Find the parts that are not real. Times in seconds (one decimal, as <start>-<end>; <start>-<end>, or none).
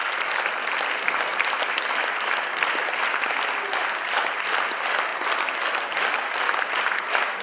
none